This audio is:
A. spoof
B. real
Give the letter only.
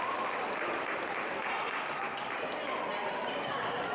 B